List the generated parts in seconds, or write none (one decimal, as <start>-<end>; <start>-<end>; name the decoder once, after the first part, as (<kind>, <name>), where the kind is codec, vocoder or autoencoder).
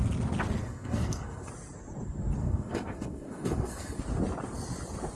0.6-1.5 (codec, SNAC); 2.4-4.0